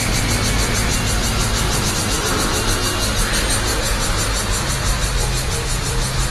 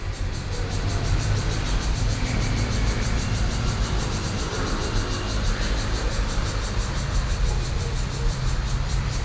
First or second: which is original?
first